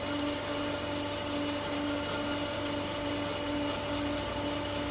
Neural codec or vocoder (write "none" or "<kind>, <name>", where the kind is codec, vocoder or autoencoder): vocoder, BigVGAN v2